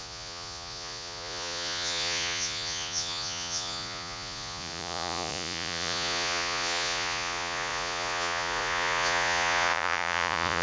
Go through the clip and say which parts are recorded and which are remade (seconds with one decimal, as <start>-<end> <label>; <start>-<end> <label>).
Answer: 0.0-10.6 remade